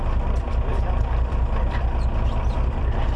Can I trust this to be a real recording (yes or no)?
no